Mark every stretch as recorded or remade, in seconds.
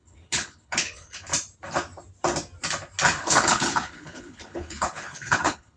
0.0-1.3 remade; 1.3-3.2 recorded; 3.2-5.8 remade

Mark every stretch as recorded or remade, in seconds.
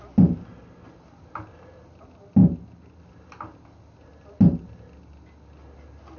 0.0-6.2 recorded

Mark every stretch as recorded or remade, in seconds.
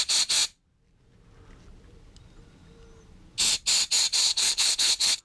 0.0-4.2 recorded; 4.2-5.2 remade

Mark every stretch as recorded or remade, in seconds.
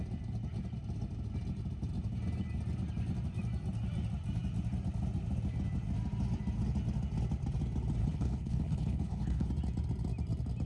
0.0-8.0 recorded; 8.0-9.5 remade; 9.5-10.7 recorded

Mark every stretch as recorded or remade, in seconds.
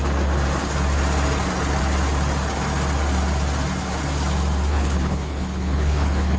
0.0-4.7 recorded; 4.7-6.4 remade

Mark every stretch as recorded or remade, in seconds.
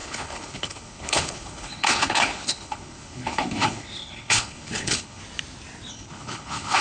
0.0-5.2 remade; 5.2-5.9 recorded; 5.9-6.8 remade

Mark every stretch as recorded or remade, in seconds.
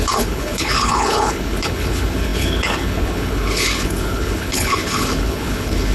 0.0-5.9 remade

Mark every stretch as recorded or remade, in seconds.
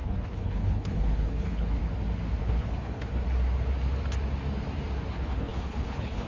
0.0-1.8 remade; 1.8-2.4 recorded; 2.4-3.2 remade; 3.2-5.1 recorded; 5.1-6.3 remade